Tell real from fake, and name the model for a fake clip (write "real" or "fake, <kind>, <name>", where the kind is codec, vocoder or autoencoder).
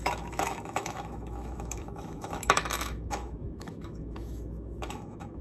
fake, autoencoder, DAC-VAE